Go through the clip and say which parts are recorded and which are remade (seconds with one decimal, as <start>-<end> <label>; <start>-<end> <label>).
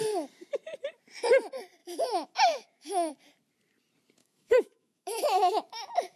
0.0-1.8 recorded; 1.8-3.1 remade; 3.1-4.2 recorded; 4.2-6.2 remade